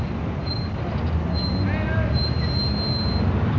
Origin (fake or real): real